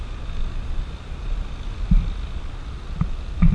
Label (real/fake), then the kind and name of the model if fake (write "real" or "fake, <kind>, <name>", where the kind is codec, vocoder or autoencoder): real